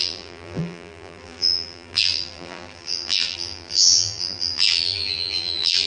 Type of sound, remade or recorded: remade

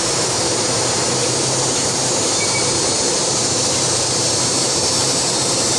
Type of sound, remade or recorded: remade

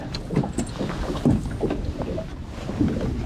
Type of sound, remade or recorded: recorded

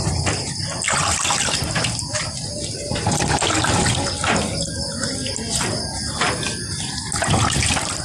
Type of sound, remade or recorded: recorded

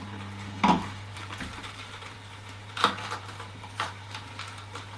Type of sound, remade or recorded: remade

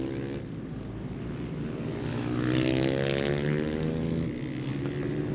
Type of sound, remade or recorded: recorded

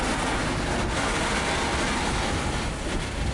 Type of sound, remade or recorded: recorded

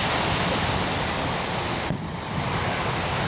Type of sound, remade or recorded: recorded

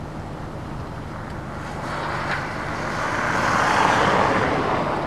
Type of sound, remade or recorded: recorded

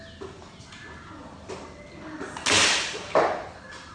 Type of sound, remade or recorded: recorded